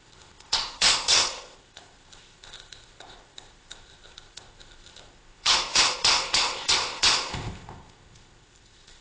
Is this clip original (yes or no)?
no